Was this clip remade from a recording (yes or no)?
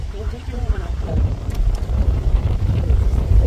yes